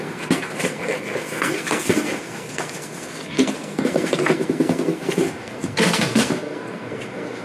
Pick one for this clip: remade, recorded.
remade